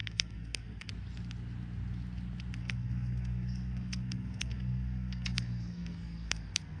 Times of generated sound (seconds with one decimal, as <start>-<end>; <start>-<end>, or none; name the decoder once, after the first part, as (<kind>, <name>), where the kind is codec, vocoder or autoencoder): 0.0-0.9 (codec, SNAC); 2.6-6.8